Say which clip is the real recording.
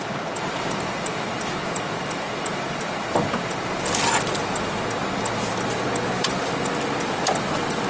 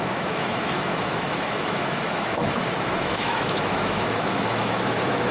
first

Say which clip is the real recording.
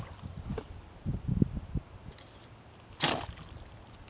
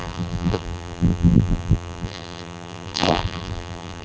first